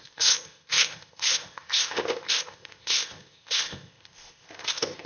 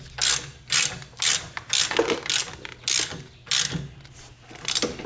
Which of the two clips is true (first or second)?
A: second